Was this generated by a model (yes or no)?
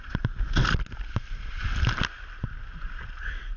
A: no